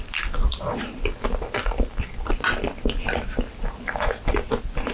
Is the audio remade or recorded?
recorded